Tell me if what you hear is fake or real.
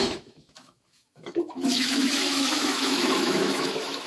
fake